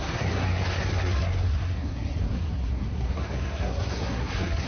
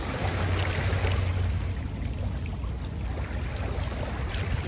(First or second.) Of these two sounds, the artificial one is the first